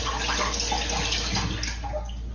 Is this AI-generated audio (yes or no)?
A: no